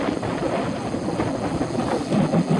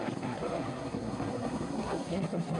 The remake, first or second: second